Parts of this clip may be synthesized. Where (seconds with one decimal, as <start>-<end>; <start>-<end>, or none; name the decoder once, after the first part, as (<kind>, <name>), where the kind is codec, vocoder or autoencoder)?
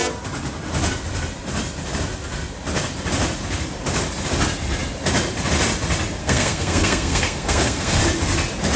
6.2-8.0 (codec, SNAC)